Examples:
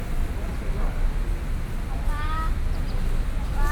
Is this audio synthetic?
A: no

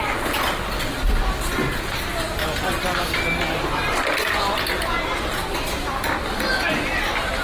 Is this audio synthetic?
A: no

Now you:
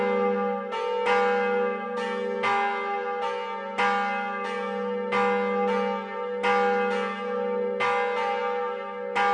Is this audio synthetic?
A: no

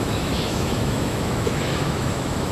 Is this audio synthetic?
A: yes